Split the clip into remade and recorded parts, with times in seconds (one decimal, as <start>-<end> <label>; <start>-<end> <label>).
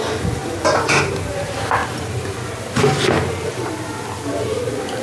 0.0-5.0 recorded